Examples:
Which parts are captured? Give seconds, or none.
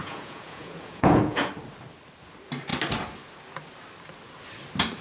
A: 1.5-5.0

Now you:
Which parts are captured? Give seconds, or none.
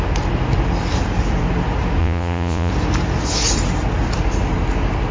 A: 0.0-2.0; 2.7-5.1